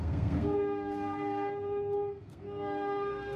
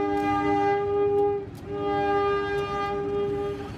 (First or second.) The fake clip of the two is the first